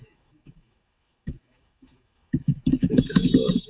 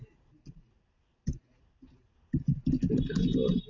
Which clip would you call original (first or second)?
second